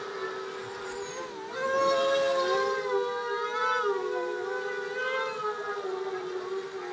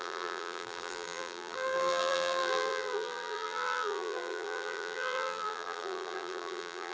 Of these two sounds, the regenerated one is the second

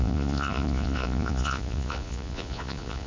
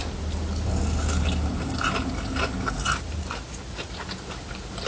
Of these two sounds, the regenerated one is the first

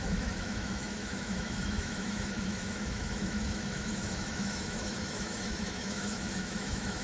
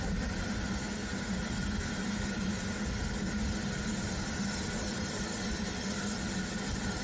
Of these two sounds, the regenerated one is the first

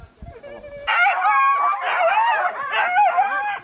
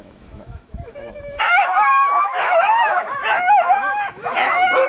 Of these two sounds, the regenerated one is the second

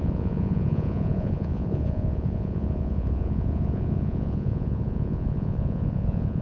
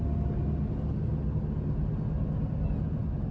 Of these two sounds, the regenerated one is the first